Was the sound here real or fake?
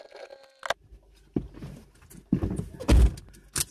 real